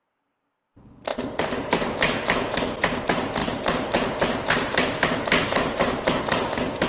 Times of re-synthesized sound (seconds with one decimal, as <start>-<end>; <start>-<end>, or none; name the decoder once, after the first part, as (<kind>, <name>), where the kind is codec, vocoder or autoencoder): 1.1-3.0 (vocoder, BigVGAN v2); 3.4-6.2